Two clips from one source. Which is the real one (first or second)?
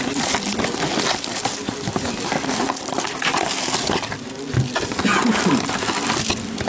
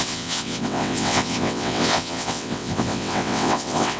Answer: first